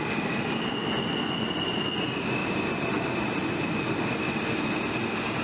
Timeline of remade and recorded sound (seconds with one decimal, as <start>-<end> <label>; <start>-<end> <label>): 0.0-5.4 recorded